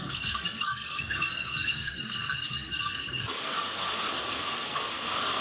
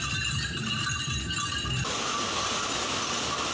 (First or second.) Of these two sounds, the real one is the second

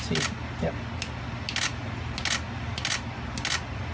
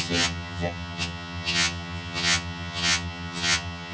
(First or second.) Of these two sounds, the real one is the first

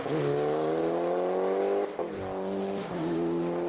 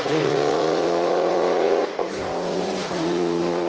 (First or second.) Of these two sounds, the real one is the first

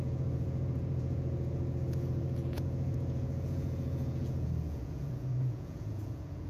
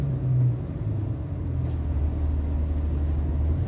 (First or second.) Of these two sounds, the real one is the second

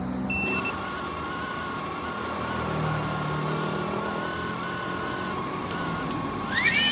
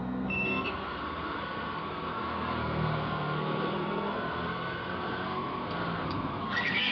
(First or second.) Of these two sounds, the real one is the first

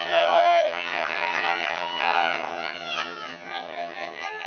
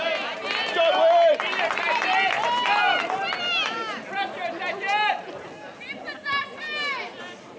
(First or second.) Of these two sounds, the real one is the second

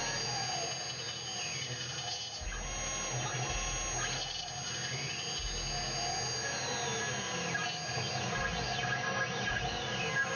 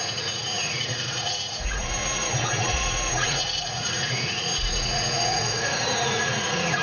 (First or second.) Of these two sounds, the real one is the first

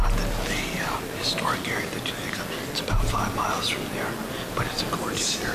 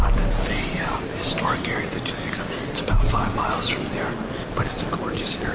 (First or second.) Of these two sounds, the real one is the first